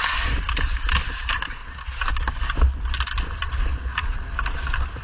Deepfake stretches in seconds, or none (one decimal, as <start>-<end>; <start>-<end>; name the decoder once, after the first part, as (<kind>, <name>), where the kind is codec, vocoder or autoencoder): 0.5-1.6 (vocoder, BigVGAN v2); 4.5-5.0